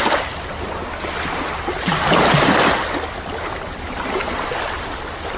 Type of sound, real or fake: real